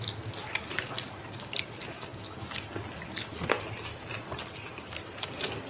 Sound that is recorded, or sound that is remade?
recorded